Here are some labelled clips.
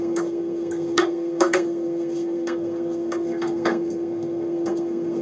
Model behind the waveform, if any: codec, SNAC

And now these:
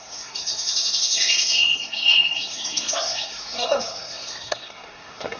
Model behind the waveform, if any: codec, SNAC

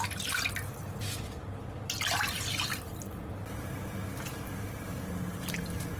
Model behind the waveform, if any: none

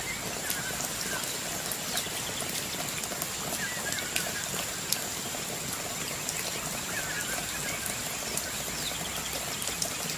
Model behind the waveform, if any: none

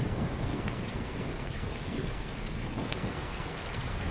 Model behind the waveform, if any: codec, SNAC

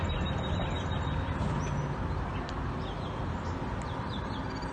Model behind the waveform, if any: none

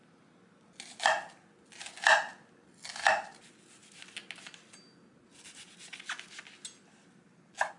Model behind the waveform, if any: none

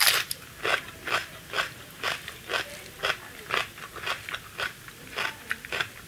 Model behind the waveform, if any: vocoder, BigVGAN v2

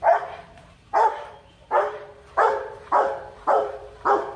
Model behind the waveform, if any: vocoder, BigVGAN v2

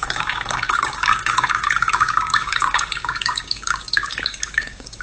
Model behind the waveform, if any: codec, DAC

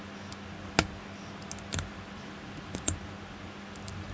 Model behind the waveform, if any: none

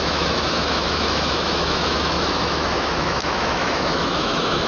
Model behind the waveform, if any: autoencoder, DAC-VAE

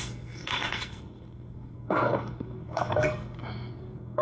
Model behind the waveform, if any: codec, SNAC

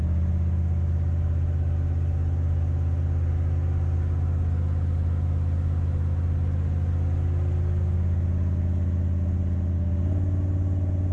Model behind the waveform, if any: none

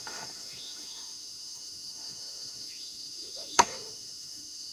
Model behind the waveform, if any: autoencoder, DAC-VAE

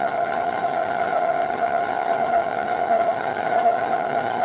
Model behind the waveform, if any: vocoder, HiFi-GAN